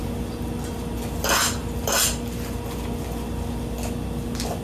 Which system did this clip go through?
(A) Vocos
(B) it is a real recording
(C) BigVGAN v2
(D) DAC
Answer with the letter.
B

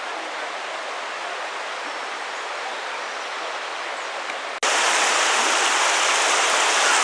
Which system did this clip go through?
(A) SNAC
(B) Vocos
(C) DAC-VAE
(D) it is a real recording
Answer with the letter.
D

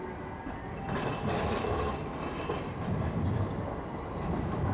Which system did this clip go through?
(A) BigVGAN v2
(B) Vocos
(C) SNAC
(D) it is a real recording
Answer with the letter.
D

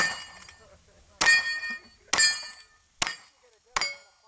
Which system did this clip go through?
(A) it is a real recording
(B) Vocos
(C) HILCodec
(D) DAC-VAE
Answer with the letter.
A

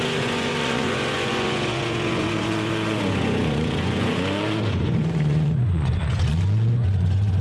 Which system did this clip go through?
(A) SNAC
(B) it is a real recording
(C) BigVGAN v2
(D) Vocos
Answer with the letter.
D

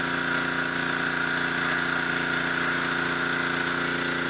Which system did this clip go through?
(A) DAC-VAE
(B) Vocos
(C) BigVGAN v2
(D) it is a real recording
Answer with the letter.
D